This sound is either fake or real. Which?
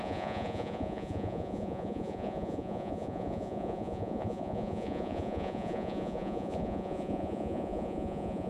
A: fake